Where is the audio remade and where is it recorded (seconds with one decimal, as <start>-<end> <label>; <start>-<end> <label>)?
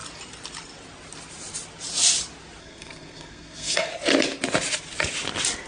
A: 0.0-2.6 recorded; 2.6-3.9 remade; 3.9-5.7 recorded